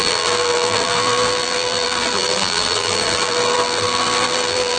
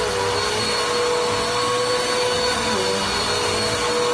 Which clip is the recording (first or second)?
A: second